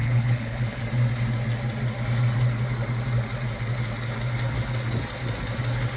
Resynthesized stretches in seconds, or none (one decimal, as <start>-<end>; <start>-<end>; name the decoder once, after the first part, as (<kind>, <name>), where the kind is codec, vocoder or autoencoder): 0.0-0.8 (codec, HILCodec)